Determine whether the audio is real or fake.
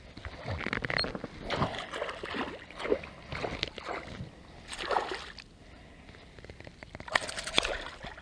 real